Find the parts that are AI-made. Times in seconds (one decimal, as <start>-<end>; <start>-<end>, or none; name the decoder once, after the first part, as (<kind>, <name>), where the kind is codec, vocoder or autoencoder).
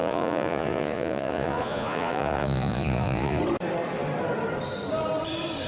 0.0-3.4 (vocoder, Vocos)